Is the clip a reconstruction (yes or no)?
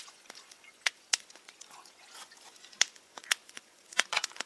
yes